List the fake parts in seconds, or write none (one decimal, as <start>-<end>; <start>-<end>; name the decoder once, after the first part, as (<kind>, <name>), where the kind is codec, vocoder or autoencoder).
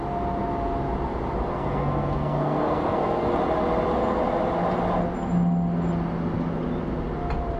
1.5-3.3 (codec, SNAC)